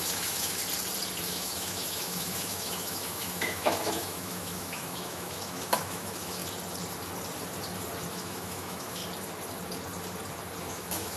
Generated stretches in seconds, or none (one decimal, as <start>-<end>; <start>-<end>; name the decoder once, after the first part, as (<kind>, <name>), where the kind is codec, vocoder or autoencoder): 0.0-0.6 (autoencoder, DAC-VAE); 1.2-6.4; 8.1-9.0; 10.6-11.2